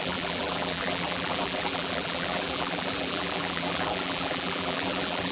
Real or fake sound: fake